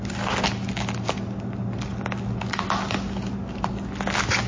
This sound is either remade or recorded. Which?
recorded